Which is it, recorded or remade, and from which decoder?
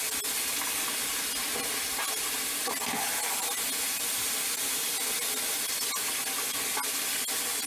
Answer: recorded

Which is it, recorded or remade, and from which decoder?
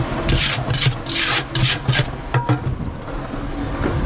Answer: recorded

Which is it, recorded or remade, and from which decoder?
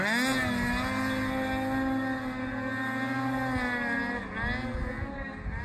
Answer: recorded